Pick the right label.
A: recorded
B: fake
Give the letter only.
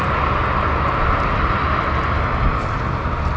A